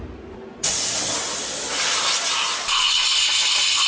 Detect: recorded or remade recorded